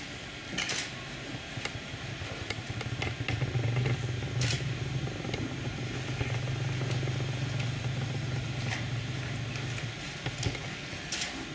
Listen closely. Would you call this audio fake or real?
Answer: real